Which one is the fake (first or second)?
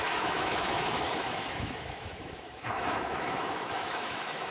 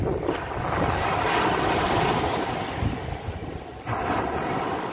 first